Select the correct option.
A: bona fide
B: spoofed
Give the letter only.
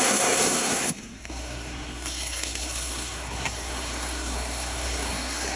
B